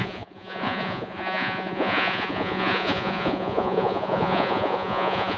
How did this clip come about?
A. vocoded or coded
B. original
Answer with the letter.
A